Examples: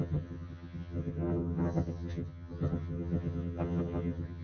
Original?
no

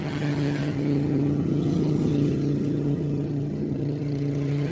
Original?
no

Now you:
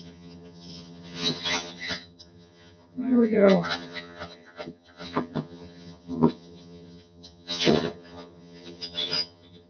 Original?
no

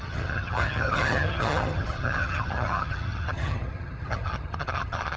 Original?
no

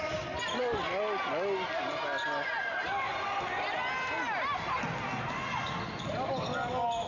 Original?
yes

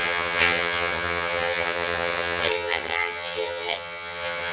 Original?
no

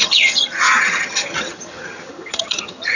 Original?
no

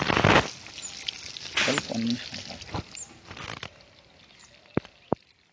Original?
yes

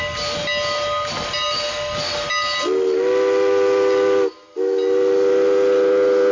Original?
yes